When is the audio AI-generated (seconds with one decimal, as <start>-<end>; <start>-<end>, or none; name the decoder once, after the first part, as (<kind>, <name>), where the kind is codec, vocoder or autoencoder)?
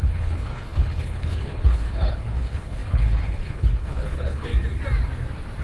0.0-4.5 (codec, HILCodec)